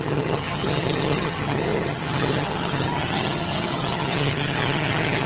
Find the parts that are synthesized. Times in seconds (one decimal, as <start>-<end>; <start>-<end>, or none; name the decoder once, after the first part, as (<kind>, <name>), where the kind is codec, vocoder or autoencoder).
0.0-5.3 (vocoder, HiFi-GAN)